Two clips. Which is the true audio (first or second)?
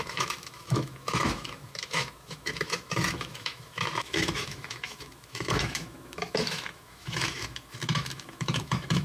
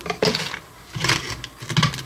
second